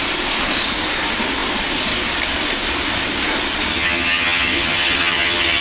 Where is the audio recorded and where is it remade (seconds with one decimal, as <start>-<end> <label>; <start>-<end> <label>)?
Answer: 0.0-3.7 recorded; 3.7-5.6 remade